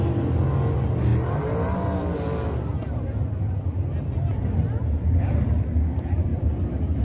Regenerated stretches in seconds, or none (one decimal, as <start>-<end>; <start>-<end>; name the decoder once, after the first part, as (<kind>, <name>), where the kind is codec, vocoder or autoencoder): 6.3-7.0 (vocoder, BigVGAN v2)